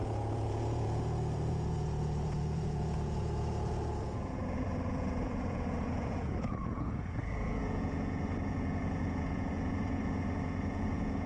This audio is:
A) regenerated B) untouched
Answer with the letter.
A